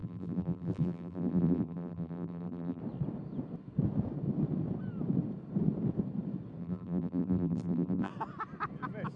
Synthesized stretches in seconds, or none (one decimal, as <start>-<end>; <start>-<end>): 0.0-2.8; 6.6-8.1